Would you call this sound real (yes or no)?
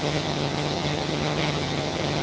no